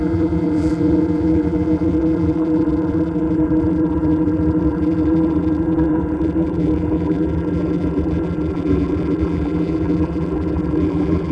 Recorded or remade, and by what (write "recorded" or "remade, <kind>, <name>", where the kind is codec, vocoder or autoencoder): remade, vocoder, BigVGAN v2